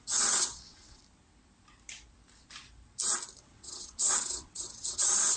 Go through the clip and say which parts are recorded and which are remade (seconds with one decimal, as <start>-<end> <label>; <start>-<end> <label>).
0.0-1.0 remade; 1.0-3.4 recorded; 3.4-5.4 remade